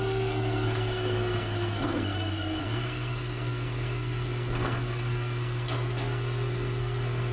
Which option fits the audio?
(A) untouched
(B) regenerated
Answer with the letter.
B